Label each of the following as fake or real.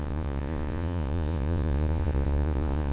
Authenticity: fake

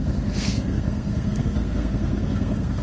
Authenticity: fake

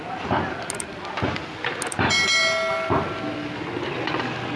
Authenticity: real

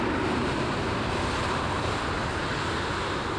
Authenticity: real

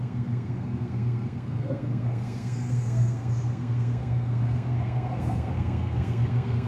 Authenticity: fake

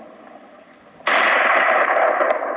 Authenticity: real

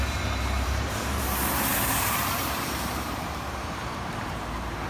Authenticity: fake